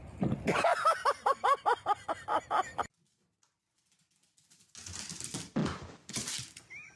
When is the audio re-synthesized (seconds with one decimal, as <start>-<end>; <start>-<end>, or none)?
none